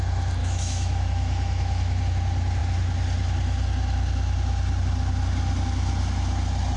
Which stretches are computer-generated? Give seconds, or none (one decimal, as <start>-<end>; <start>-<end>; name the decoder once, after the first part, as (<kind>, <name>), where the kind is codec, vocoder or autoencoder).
0.4-2.0 (autoencoder, DAC-VAE)